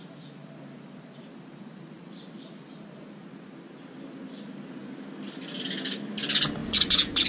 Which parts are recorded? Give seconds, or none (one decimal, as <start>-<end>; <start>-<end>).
0.0-6.6